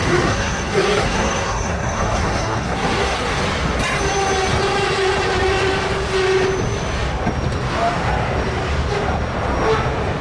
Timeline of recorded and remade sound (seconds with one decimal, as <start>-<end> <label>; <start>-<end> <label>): 0.0-3.4 remade; 3.4-10.2 recorded